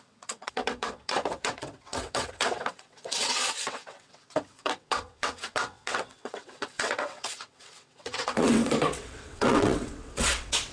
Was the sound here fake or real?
fake